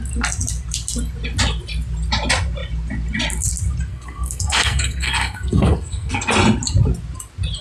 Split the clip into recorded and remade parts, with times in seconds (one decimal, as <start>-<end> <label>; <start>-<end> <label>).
0.0-3.9 recorded; 3.9-6.3 remade; 6.3-7.6 recorded